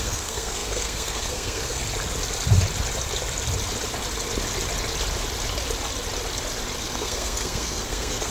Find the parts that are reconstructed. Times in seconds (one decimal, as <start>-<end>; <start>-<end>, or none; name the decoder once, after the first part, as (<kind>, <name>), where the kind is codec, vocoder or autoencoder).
0.0-1.8 (codec, SNAC); 6.8-8.3